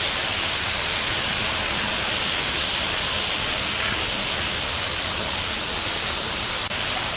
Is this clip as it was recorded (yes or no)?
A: yes